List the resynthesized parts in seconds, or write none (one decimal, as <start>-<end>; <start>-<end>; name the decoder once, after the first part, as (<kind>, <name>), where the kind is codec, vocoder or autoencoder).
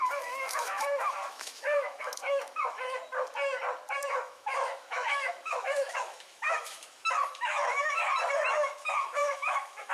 0.0-3.0 (autoencoder, DAC-VAE); 4.1-8.0; 8.5-9.9